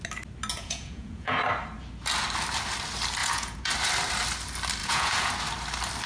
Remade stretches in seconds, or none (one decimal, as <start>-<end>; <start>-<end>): 0.5-1.4; 3.2-3.7; 4.8-5.3